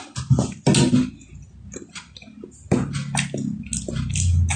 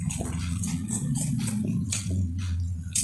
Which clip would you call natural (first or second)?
first